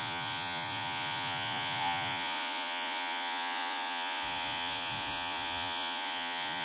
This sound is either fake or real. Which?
fake